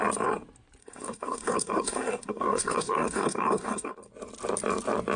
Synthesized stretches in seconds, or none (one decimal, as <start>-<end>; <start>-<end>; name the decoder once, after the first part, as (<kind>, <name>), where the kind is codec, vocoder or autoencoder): 0.8-3.9 (codec, SNAC)